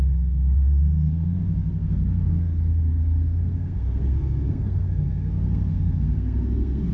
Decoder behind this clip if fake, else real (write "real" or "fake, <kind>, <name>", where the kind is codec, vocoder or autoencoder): fake, codec, SNAC